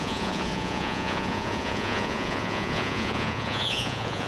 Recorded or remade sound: remade